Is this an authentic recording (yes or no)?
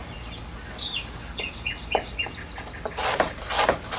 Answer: yes